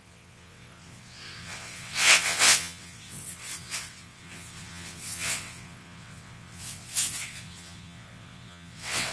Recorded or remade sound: remade